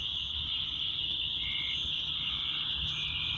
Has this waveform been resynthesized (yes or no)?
no